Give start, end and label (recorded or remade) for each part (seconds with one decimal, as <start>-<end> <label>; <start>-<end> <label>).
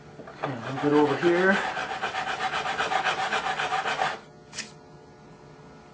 0.0-5.9 recorded